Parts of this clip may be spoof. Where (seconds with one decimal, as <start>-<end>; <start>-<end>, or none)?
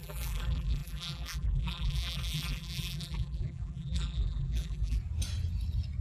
0.0-5.0